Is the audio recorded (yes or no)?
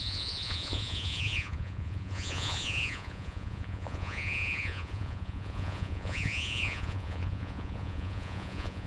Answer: no